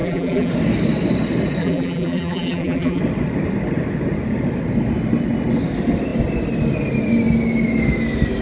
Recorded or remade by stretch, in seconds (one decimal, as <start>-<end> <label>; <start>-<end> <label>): 0.0-0.5 remade; 0.5-1.6 recorded; 1.6-3.0 remade; 3.0-8.4 recorded